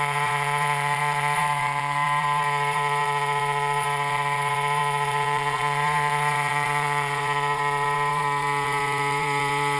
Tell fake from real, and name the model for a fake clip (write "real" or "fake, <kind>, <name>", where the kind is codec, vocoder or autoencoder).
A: fake, vocoder, Vocos